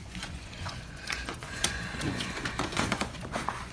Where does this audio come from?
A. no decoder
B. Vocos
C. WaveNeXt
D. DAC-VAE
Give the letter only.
B